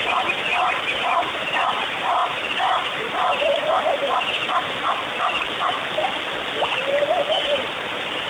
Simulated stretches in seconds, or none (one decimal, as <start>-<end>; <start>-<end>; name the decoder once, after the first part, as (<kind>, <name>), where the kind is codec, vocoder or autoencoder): 0.0-4.4 (vocoder, BigVGAN v2); 7.5-8.3